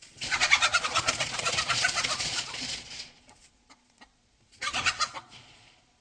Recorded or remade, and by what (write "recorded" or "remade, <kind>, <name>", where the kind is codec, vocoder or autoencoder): remade, vocoder, Vocos